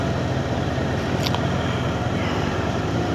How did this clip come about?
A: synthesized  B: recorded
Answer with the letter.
B